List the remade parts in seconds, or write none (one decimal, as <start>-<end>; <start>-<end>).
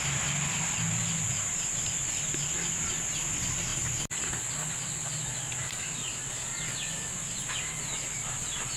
none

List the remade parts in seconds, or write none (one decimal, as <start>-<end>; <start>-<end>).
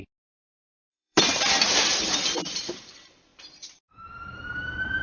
0.0-5.0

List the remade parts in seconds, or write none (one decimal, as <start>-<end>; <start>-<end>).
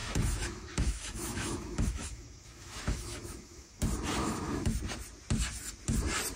0.0-3.8; 4.2-4.8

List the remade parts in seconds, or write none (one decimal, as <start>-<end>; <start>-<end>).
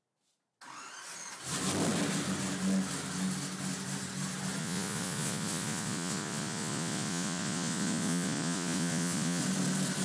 4.6-9.4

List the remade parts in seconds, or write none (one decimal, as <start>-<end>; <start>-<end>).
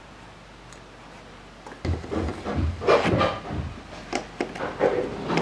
none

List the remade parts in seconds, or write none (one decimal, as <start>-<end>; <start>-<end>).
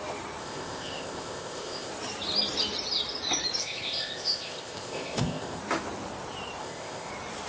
0.4-1.9; 3.6-5.6; 6.6-7.1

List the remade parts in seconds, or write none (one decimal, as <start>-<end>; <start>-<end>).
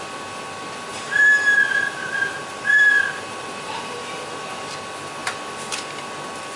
0.9-4.7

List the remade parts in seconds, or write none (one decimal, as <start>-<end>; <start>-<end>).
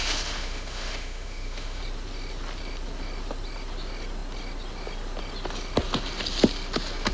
0.0-1.8